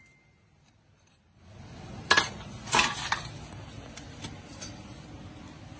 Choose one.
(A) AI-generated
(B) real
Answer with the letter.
B